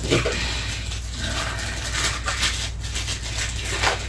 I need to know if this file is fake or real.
real